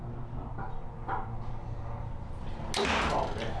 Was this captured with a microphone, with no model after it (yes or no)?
yes